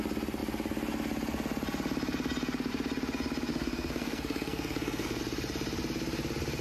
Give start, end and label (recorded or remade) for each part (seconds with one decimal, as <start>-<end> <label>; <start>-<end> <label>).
0.0-3.5 recorded; 3.5-5.2 remade; 5.2-6.6 recorded